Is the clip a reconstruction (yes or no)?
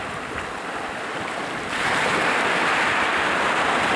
no